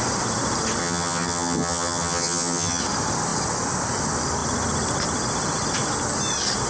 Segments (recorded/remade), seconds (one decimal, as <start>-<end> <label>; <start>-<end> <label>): 0.0-0.8 recorded; 0.8-2.8 remade; 2.8-6.7 recorded